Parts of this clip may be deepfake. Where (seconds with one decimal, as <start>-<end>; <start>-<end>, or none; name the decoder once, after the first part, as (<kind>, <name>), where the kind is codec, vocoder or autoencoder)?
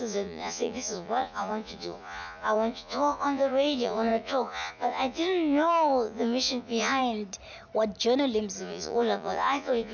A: 0.0-7.0 (vocoder, Vocos); 8.6-9.9